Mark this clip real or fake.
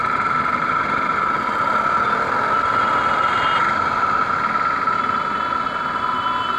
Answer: real